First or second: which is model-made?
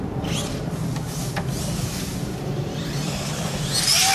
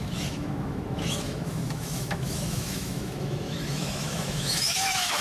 second